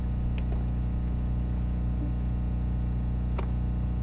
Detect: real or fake real